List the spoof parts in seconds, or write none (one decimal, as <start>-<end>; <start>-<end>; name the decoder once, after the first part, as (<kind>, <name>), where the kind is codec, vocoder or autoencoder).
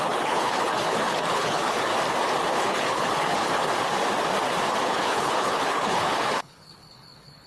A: 0.0-1.9 (codec, HILCodec); 2.5-3.7; 4.8-7.5